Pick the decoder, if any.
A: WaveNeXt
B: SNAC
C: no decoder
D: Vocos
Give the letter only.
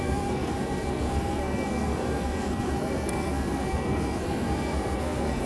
B